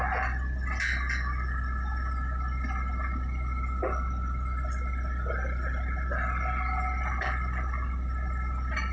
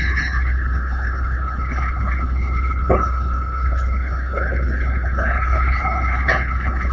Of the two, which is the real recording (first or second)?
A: first